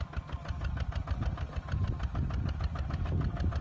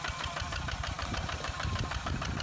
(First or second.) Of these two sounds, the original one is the first